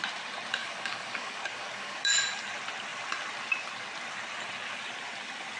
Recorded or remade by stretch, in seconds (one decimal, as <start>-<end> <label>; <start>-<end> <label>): 0.0-0.6 recorded; 0.6-2.2 remade; 2.2-5.6 recorded